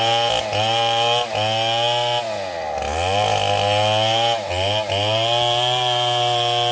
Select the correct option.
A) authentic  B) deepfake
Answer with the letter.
A